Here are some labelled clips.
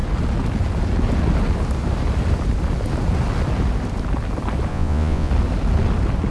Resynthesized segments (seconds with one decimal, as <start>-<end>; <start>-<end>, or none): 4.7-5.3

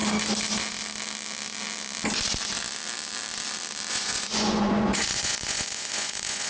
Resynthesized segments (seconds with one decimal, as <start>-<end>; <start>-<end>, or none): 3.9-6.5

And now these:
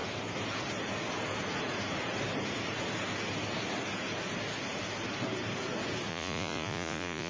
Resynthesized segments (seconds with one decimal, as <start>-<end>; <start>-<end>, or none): 6.1-7.3

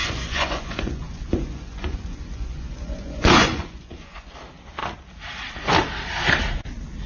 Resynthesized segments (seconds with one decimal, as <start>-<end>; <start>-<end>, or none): 0.0-4.3

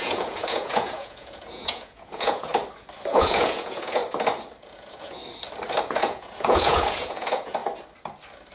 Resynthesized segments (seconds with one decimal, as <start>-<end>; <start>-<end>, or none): 0.0-2.5; 3.1-4.0; 4.6-5.2; 5.8-7.6